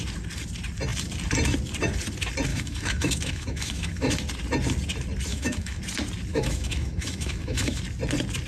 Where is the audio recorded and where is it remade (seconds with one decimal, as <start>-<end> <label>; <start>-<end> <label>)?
0.0-2.5 recorded; 2.5-4.1 remade; 4.1-5.3 recorded; 5.3-5.8 remade; 5.8-6.3 recorded; 6.3-7.8 remade; 7.8-8.5 recorded